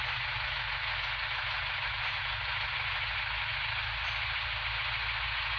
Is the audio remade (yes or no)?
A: no